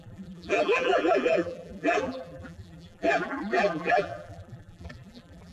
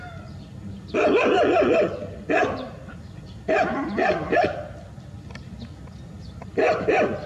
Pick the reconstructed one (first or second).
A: first